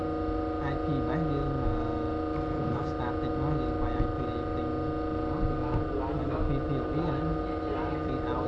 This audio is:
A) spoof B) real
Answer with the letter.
B